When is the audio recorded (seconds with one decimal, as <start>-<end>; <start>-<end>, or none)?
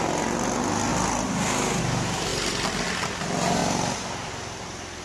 0.0-5.0